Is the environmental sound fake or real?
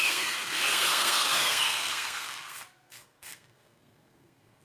fake